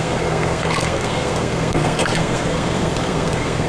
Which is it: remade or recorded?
remade